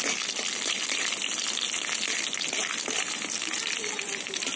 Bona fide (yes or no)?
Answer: yes